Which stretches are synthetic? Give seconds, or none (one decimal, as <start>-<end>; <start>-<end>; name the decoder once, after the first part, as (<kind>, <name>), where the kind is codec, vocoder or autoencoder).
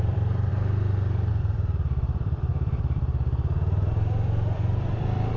0.0-0.5 (vocoder, BigVGAN v2); 1.3-5.4